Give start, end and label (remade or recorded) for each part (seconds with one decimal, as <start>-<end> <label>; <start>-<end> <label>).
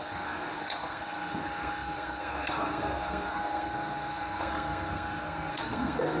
0.0-6.2 remade